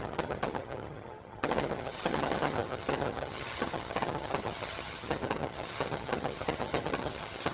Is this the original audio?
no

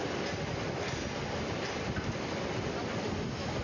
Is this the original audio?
yes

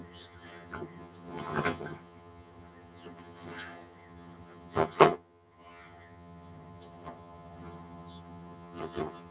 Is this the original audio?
no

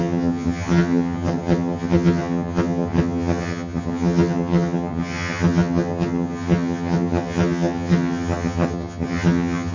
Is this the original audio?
no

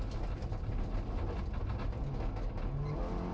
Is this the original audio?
yes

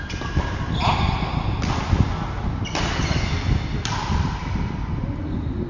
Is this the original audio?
yes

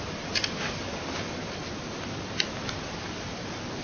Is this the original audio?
yes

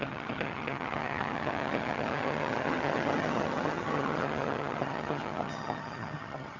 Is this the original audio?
no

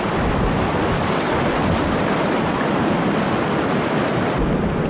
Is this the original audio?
yes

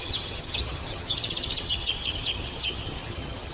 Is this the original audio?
no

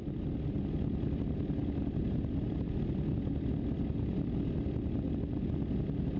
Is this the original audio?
yes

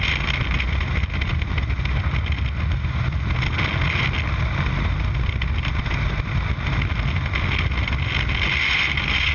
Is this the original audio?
yes